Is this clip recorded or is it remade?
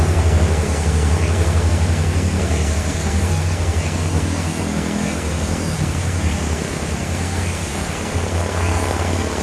remade